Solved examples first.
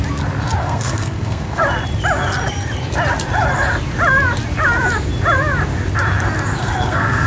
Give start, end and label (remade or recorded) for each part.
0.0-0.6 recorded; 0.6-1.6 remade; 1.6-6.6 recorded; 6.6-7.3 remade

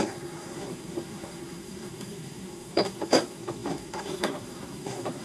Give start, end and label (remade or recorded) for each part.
0.0-5.2 remade